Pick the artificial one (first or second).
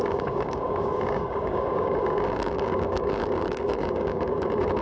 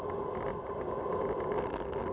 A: first